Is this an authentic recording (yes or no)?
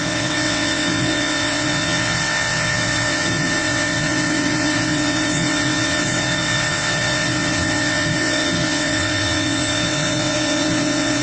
no